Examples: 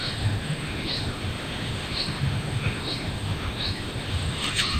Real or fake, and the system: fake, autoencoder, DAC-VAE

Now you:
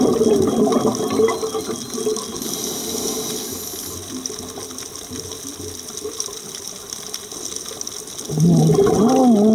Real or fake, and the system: real